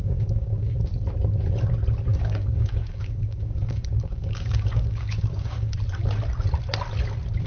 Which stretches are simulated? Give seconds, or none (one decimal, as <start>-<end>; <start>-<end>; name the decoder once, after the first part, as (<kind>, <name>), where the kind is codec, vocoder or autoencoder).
0.0-0.8 (codec, DAC); 2.1-5.7